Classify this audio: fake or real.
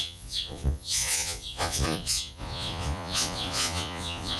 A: fake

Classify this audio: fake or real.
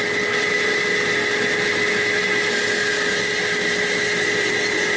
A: real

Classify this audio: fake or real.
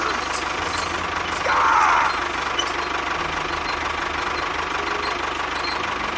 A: real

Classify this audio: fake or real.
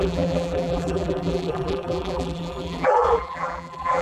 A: fake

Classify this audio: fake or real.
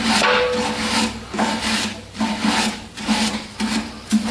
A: real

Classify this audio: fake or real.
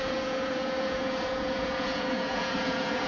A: fake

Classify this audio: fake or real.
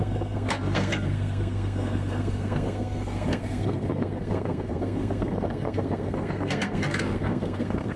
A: fake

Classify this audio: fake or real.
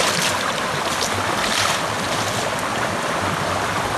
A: real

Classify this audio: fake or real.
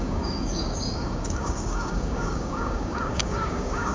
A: fake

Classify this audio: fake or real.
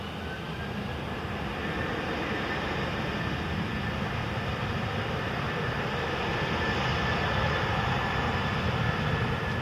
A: real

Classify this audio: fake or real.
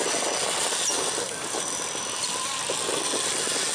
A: real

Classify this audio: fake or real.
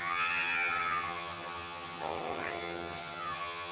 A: fake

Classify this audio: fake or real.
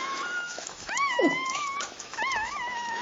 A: fake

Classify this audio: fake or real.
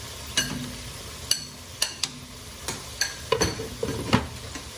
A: real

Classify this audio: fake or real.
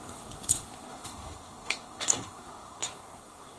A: fake